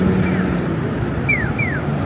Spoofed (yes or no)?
no